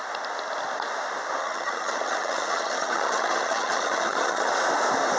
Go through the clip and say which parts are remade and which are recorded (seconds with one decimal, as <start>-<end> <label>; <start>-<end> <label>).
0.0-1.4 recorded; 1.4-4.5 remade; 4.5-5.2 recorded